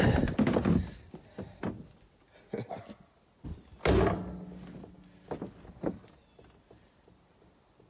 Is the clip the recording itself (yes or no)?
yes